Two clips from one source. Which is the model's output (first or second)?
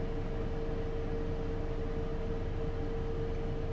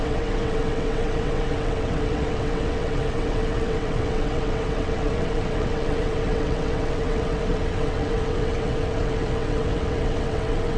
second